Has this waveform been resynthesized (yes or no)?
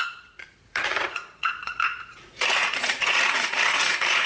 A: yes